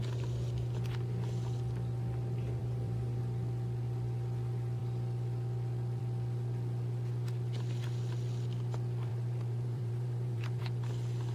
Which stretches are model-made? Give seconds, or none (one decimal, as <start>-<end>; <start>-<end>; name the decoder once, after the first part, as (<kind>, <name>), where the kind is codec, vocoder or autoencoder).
2.6-3.2 (vocoder, BigVGAN v2); 9.1-10.6